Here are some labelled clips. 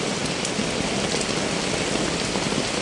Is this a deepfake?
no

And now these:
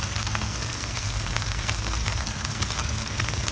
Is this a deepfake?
yes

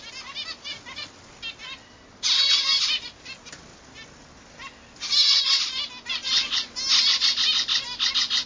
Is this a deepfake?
no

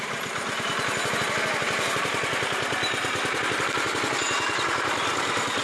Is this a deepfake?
no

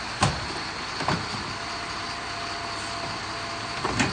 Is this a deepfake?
no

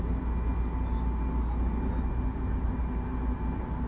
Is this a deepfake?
no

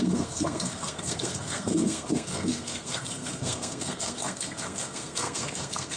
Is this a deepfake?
yes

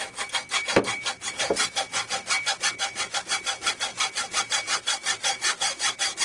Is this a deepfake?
no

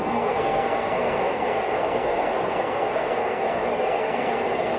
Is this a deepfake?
yes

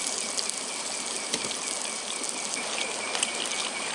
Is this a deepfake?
no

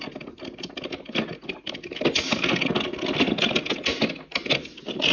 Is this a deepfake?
no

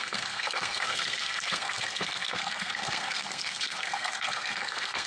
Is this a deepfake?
yes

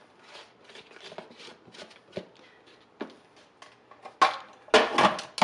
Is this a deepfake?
no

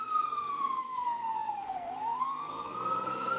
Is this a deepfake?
yes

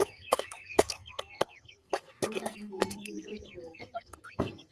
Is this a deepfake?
yes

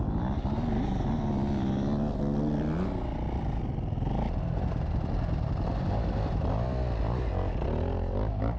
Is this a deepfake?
no